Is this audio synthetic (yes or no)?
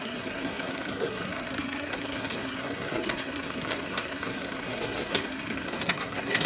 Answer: yes